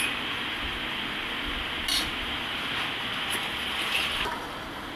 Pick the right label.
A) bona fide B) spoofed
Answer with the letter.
A